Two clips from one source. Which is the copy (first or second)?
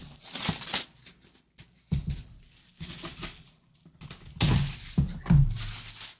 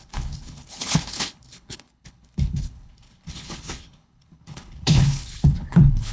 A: second